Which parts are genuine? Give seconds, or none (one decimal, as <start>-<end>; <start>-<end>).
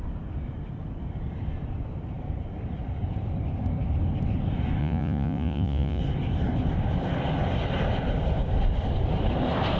0.0-4.8; 6.0-9.8